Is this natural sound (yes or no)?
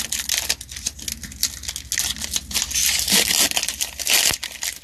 yes